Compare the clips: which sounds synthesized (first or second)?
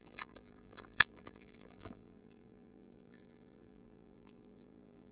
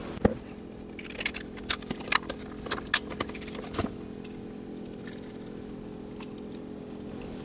first